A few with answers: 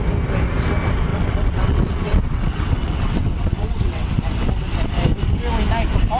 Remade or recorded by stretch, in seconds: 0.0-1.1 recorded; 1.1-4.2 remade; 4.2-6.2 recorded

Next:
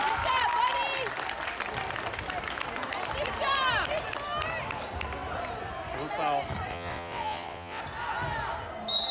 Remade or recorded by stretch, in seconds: 0.0-6.7 recorded; 6.7-7.8 remade; 7.8-9.1 recorded

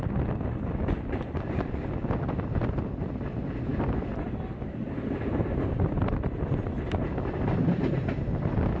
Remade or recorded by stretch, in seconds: 0.0-8.8 recorded

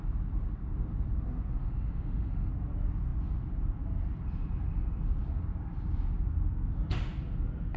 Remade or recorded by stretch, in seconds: 0.0-1.6 recorded; 1.6-2.5 remade; 2.5-7.8 recorded

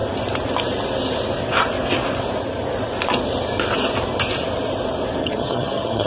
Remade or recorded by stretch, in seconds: 0.0-5.2 recorded; 5.2-6.1 remade

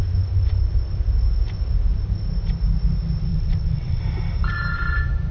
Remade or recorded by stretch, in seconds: 0.0-3.3 recorded; 3.3-4.0 remade; 4.0-5.3 recorded

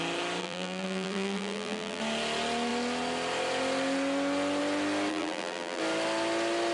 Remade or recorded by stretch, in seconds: 0.0-0.4 recorded; 0.4-2.0 remade; 2.0-5.1 recorded; 5.1-5.8 remade; 5.8-6.7 recorded